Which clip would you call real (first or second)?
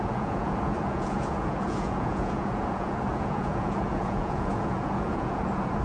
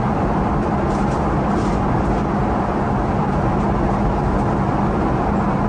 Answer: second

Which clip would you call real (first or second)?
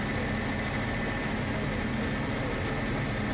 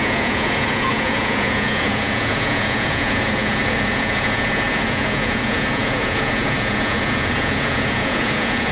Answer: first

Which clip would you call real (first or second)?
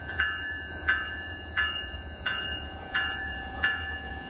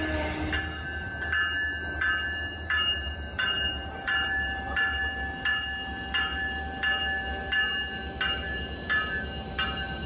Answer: second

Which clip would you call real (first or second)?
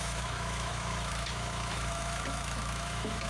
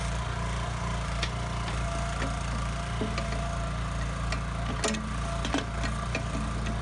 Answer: second